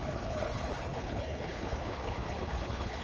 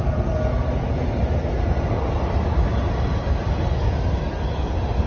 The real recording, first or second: second